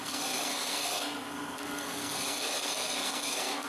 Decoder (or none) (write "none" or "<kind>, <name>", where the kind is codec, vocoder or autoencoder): codec, SNAC